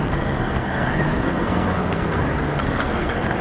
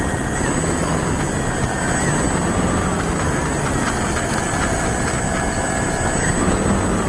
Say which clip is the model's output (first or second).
first